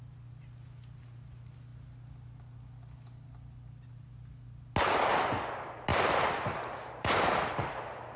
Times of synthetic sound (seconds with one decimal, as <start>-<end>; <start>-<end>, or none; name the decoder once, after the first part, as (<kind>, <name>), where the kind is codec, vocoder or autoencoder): 5.9-7.4 (vocoder, BigVGAN v2)